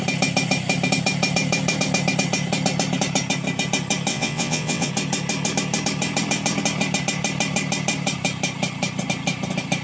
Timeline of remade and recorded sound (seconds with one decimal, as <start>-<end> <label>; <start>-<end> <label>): 0.0-4.1 recorded; 4.1-4.9 remade; 4.9-9.8 recorded